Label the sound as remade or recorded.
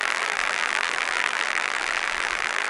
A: remade